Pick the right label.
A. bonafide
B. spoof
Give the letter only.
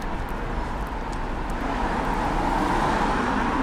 A